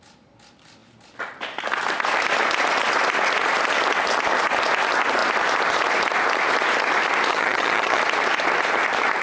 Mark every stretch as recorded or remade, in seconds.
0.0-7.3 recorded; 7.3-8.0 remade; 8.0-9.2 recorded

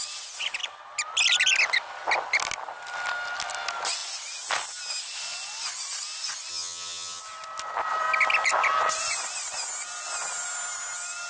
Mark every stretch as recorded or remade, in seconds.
0.0-6.5 recorded; 6.5-7.2 remade; 7.2-11.3 recorded

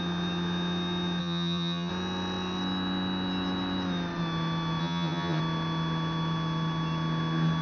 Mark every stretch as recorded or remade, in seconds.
0.0-1.2 recorded; 1.2-1.9 remade; 1.9-4.8 recorded; 4.8-5.4 remade; 5.4-7.6 recorded

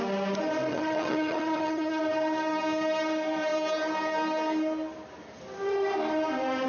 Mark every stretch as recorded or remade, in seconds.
0.0-0.7 recorded; 0.7-2.0 remade; 2.0-6.7 recorded

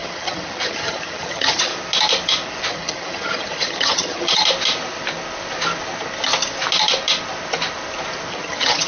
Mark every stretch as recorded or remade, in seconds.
0.0-1.7 remade; 1.7-2.7 recorded; 2.7-4.4 remade; 4.4-8.3 recorded; 8.3-8.9 remade

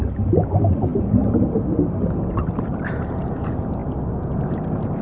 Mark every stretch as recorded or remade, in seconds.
0.0-5.0 recorded